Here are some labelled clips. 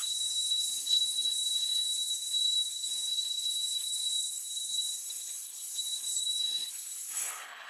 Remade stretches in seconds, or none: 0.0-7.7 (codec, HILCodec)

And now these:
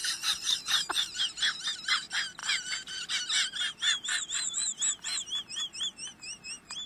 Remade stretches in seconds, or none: 0.0-1.2 (vocoder, BigVGAN v2); 2.4-3.1